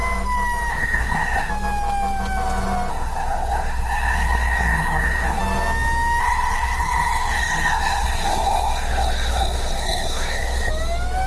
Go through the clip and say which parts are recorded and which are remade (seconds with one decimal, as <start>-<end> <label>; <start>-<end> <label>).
0.0-0.7 recorded; 0.7-1.5 remade; 1.5-2.9 recorded; 2.9-5.4 remade; 5.4-6.2 recorded; 6.2-10.7 remade; 10.7-11.3 recorded